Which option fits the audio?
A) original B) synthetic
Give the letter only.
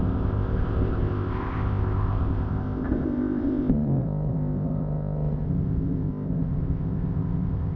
B